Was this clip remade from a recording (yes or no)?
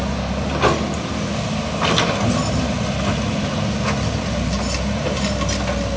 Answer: no